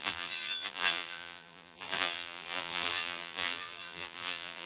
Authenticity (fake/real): fake